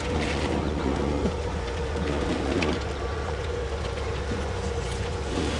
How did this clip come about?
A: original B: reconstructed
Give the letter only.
B